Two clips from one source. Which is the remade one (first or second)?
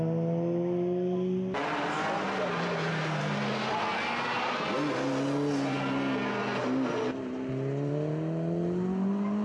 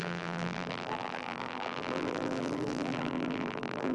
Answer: second